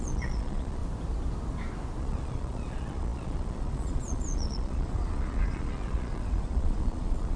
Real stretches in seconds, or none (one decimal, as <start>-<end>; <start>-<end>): 0.8-2.0